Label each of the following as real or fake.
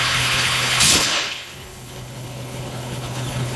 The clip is fake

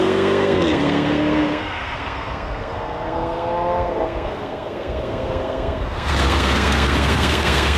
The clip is fake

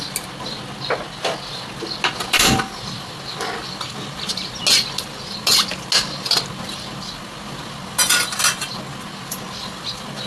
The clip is real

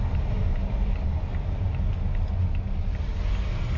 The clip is real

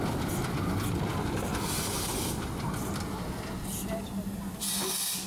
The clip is real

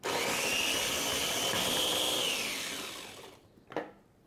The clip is real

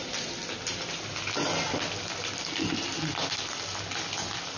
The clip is real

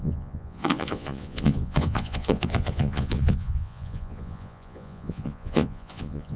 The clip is fake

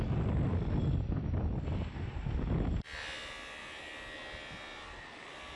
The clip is real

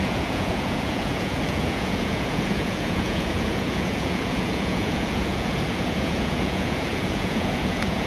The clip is fake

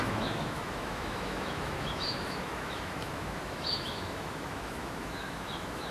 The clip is fake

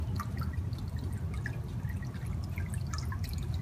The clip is real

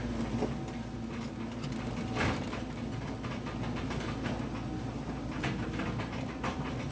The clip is real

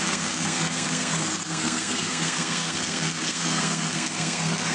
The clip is fake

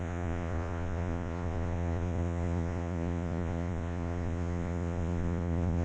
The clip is fake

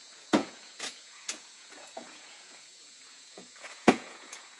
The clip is fake